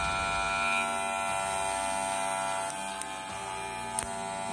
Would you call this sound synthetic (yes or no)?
no